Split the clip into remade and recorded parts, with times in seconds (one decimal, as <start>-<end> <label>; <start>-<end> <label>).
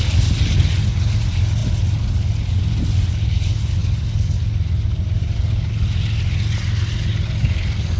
0.0-8.0 recorded